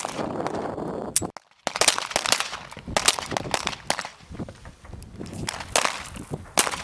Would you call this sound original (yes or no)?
yes